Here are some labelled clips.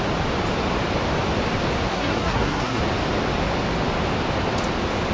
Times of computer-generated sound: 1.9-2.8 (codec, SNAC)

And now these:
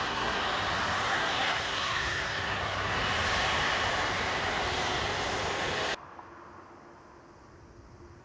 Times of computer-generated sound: 0.0-0.4 (codec, SNAC); 1.0-3.0

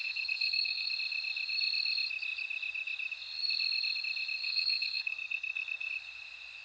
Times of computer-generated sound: 0.0-0.9 (codec, SNAC); 4.4-5.9

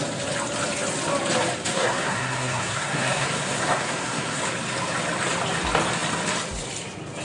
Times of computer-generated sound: 1.7-4.4 (codec, SNAC)

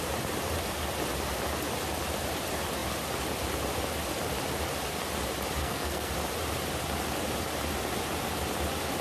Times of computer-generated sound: 5.6-6.1 (codec, SNAC)

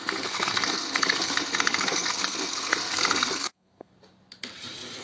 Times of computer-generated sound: 0.0-3.9 (codec, SNAC)

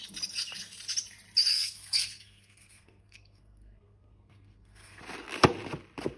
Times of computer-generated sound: 1.5-5.0 (codec, SNAC)

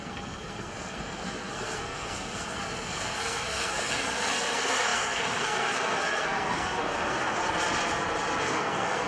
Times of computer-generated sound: 0.0-7.4 (codec, SNAC); 8.4-9.1